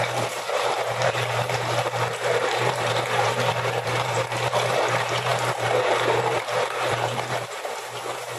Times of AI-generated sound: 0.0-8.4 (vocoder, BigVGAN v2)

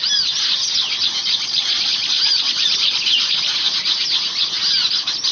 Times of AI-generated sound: none